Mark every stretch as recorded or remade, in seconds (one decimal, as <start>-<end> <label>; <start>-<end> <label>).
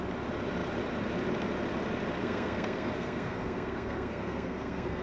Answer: 0.0-2.2 recorded; 2.2-5.0 remade